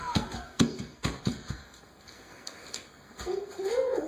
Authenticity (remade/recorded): remade